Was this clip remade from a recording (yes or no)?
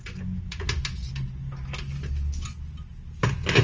no